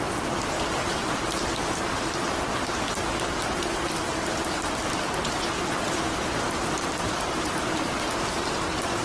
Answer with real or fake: real